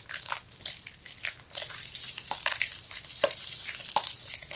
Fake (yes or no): no